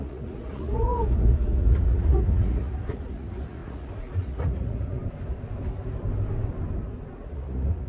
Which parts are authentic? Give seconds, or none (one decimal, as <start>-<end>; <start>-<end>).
5.0-7.1